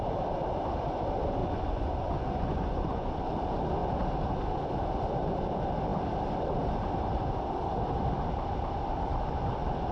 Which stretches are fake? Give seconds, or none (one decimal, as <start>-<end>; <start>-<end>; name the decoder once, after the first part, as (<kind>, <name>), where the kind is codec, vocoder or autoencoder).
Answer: 1.4-3.2 (vocoder, Vocos)